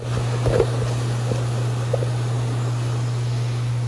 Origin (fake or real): real